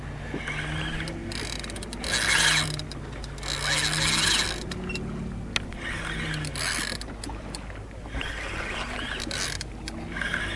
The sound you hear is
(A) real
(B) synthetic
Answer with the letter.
A